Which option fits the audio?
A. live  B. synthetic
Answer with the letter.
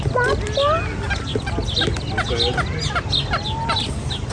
A